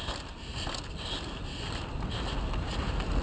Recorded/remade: recorded